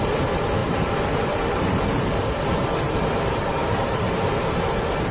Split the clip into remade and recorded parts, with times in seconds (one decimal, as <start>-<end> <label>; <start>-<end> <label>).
0.0-0.6 recorded; 0.6-1.5 remade; 1.5-3.6 recorded; 3.6-4.6 remade; 4.6-5.1 recorded